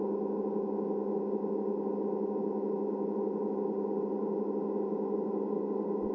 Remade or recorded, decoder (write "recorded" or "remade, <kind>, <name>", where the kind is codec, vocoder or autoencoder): recorded